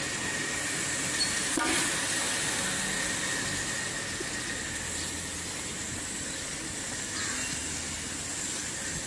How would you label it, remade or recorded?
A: recorded